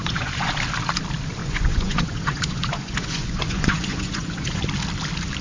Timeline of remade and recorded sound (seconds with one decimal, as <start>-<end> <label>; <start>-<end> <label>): 0.0-0.5 remade; 0.5-1.4 recorded; 1.4-4.6 remade; 4.6-5.4 recorded